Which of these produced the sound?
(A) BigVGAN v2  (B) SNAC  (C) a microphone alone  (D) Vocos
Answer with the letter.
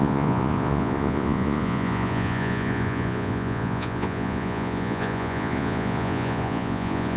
D